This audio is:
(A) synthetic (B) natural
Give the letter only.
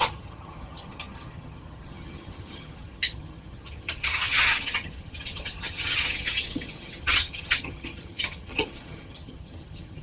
A